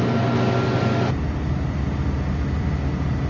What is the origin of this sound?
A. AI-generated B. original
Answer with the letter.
B